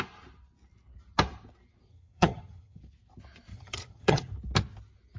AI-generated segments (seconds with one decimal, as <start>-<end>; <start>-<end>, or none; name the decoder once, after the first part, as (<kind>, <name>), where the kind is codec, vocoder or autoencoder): 1.9-2.8 (vocoder, HiFi-GAN); 3.5-4.3

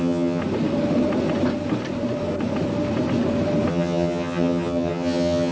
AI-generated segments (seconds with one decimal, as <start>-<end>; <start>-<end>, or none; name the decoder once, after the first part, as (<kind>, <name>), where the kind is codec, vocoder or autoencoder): 0.0-0.4 (vocoder, HiFi-GAN); 3.7-5.5

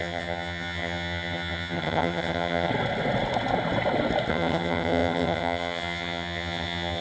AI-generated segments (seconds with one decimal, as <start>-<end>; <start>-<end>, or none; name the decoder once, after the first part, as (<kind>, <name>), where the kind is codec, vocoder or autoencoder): 0.0-2.7 (vocoder, HiFi-GAN); 4.3-7.0

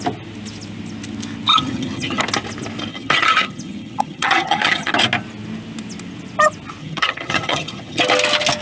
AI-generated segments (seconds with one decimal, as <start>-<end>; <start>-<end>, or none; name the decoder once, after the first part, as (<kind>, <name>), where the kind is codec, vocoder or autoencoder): 1.5-2.2 (vocoder, HiFi-GAN); 2.9-4.9; 6.8-8.0

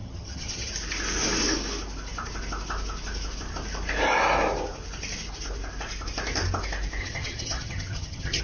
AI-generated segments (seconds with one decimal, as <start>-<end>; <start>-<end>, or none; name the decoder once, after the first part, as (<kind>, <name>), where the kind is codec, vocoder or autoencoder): 0.0-0.7 (vocoder, HiFi-GAN); 7.0-8.4

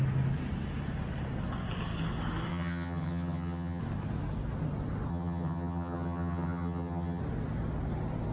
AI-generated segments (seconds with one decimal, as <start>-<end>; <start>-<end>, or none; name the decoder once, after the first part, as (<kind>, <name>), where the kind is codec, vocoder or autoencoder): 2.5-3.8 (vocoder, HiFi-GAN); 5.1-7.2

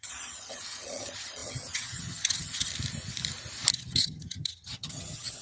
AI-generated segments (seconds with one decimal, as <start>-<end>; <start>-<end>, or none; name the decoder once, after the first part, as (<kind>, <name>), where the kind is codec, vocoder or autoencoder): 0.0-2.7 (vocoder, HiFi-GAN); 3.7-5.4